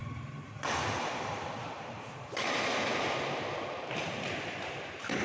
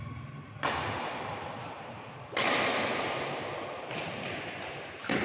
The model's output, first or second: first